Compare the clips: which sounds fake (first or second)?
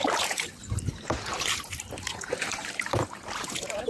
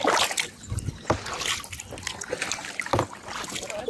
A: first